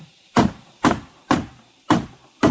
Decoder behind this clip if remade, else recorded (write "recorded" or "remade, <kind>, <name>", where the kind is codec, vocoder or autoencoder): remade, vocoder, BigVGAN v2